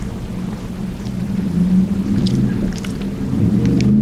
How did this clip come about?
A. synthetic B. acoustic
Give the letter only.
B